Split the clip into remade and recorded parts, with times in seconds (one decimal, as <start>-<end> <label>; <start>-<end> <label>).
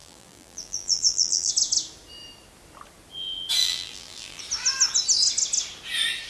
0.0-1.5 remade; 1.5-3.6 recorded; 3.6-4.4 remade; 4.4-6.3 recorded